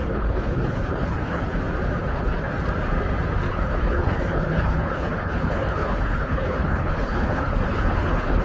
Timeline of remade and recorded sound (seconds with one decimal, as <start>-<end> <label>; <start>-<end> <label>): 0.0-1.6 remade; 1.6-2.0 recorded; 2.0-2.5 remade; 2.5-3.5 recorded; 3.5-8.4 remade